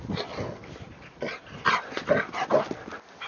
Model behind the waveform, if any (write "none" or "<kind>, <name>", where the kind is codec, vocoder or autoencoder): none